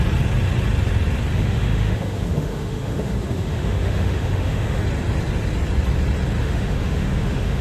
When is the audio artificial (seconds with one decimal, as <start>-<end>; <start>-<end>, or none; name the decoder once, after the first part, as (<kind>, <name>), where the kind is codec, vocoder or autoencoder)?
1.3-4.8 (autoencoder, DAC-VAE); 6.4-7.6